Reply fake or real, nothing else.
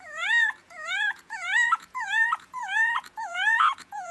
fake